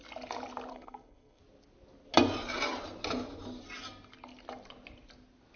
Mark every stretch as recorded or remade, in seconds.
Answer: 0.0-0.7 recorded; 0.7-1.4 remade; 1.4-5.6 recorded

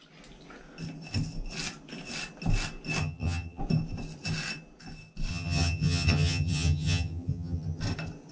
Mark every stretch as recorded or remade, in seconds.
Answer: 0.0-3.0 recorded; 3.0-3.6 remade; 3.6-5.3 recorded; 5.3-7.8 remade; 7.8-8.3 recorded

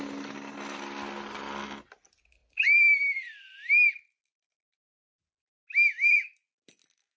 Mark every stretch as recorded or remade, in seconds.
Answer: 0.0-7.2 recorded